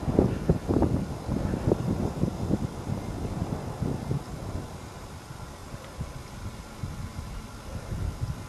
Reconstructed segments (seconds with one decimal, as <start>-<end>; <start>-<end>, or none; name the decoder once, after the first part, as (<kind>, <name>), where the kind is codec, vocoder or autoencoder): none